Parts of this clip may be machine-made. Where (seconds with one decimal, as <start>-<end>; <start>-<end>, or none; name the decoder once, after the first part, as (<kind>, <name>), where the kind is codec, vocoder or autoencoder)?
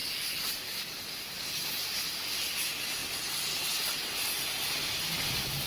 0.0-1.3 (vocoder, BigVGAN v2)